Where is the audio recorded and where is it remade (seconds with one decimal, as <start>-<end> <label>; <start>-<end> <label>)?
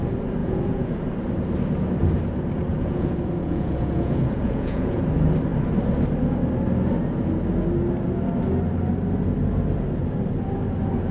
0.0-0.4 recorded; 0.4-1.0 remade; 1.0-2.7 recorded; 2.7-5.0 remade; 5.0-11.1 recorded